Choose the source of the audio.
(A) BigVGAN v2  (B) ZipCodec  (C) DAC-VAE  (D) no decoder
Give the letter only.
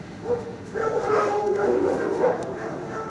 C